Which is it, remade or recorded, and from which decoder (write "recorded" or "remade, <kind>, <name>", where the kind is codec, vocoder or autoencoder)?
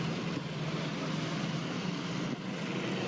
recorded